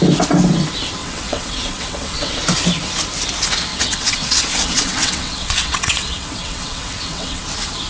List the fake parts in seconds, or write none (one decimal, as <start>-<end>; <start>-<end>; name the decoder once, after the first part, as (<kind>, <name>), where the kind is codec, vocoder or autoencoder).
1.0-2.4 (vocoder, WaveNeXt); 3.7-7.4